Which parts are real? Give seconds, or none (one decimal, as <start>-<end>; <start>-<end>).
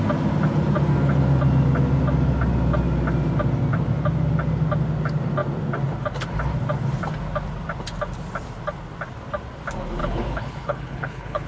0.0-10.0